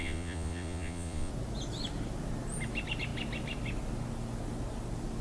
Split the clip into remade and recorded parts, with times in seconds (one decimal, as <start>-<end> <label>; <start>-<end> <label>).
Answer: 0.0-1.3 remade; 1.3-5.2 recorded